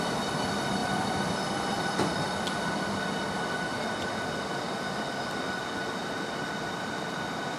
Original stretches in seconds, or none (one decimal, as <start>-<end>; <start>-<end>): 0.0-0.8; 2.4-7.6